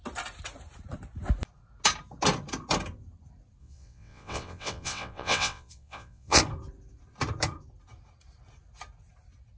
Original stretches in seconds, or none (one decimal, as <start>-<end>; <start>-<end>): 0.0-3.6; 6.4-9.6

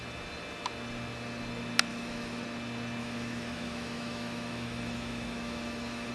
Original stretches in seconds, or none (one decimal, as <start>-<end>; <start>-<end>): 0.0-1.9; 2.4-3.0